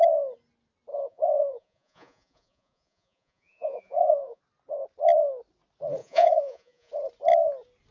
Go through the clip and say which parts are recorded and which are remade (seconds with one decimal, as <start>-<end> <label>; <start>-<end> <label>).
0.0-0.9 recorded; 0.9-4.4 remade; 4.4-6.0 recorded; 6.0-6.9 remade; 6.9-7.9 recorded